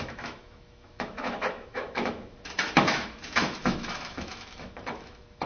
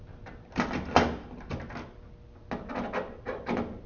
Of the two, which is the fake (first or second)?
first